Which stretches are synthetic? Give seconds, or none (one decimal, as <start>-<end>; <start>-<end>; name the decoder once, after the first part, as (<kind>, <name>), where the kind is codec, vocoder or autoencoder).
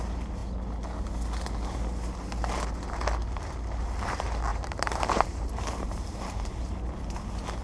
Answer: 4.5-6.9 (vocoder, BigVGAN v2)